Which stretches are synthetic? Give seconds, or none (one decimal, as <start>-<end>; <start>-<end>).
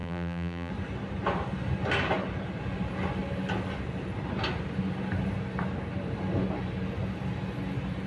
0.0-0.7